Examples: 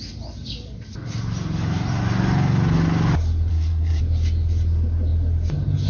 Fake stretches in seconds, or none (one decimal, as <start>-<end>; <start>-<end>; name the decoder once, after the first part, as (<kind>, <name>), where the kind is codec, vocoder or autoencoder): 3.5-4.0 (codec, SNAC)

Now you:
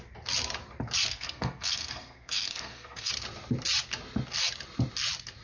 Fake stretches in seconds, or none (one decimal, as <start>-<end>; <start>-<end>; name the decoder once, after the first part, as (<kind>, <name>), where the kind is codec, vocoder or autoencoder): 1.1-3.1 (codec, SNAC)

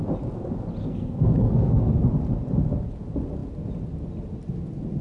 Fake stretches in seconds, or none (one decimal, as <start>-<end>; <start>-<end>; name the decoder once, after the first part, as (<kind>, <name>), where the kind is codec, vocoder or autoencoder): 0.8-1.9 (codec, SNAC)

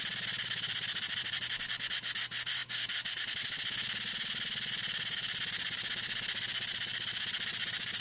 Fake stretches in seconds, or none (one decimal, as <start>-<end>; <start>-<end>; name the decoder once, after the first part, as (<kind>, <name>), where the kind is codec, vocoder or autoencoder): none